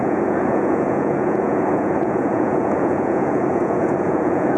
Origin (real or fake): fake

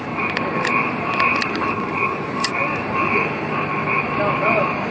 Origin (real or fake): real